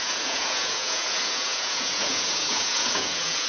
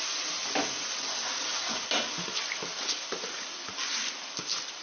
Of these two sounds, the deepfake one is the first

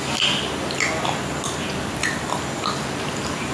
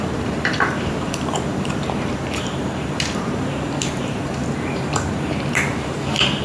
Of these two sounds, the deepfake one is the second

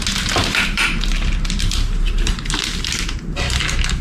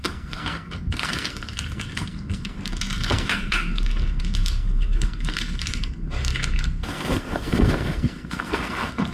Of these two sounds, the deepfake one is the second